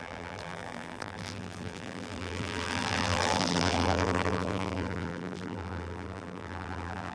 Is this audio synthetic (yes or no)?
yes